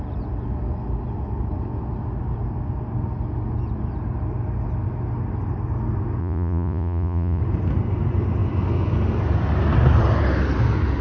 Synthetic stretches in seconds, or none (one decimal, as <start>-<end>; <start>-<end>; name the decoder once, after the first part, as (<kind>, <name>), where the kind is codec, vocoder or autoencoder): 6.2-7.4 (vocoder, Vocos)